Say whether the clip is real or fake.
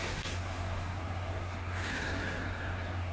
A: fake